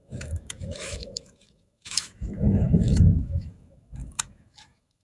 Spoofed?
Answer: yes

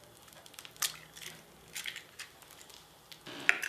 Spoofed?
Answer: no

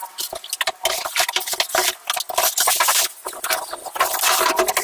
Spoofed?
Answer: no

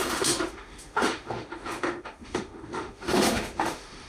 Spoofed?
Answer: yes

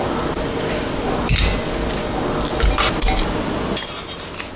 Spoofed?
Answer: no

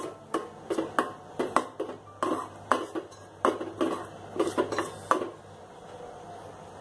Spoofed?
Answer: no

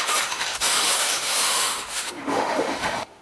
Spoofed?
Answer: yes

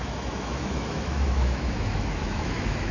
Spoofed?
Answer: yes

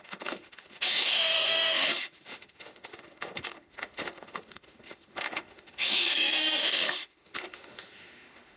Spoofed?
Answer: yes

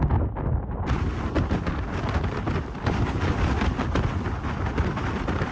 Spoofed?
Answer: no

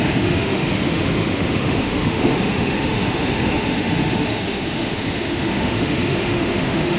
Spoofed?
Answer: yes